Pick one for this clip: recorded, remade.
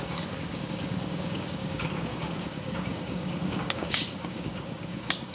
remade